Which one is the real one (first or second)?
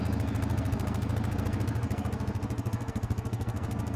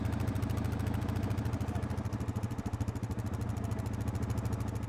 second